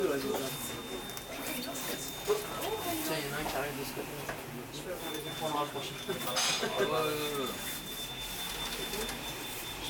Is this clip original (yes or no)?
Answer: yes